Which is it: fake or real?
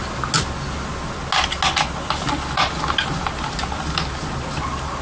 real